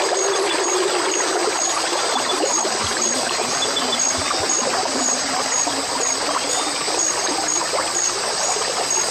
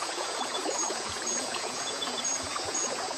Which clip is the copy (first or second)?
second